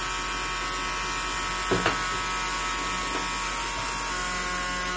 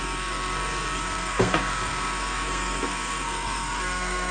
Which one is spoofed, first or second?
second